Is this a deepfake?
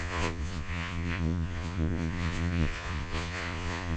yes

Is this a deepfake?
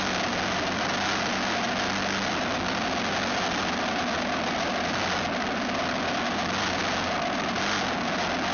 no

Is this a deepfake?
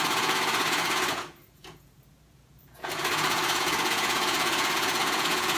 yes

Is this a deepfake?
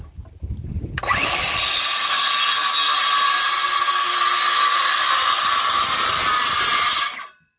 no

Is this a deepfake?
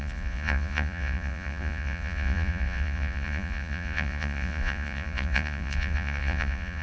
yes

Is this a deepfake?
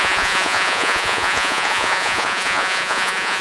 yes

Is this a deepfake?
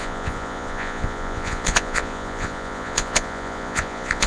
yes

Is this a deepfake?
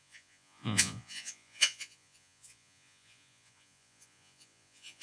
yes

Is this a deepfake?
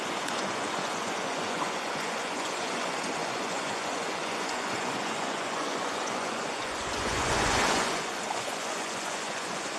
yes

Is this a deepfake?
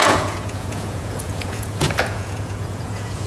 yes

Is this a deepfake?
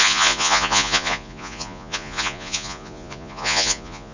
yes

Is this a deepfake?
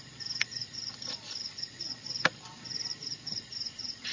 yes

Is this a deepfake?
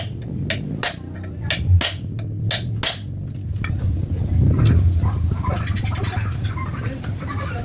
no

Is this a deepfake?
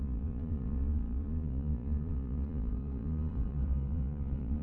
yes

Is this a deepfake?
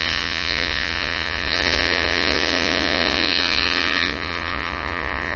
yes